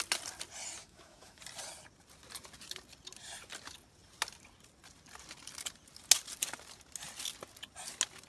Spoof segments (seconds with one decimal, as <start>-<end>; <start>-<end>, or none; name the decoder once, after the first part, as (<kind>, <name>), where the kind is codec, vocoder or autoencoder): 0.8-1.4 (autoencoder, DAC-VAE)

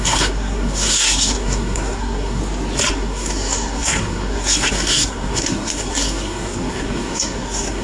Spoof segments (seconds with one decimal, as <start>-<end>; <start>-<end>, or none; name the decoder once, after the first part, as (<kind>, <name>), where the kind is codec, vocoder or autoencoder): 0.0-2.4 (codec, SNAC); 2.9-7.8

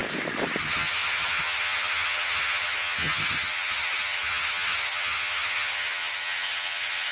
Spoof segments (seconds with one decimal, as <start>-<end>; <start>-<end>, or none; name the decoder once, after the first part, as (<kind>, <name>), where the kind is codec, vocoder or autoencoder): 0.6-7.1 (vocoder, HiFi-GAN)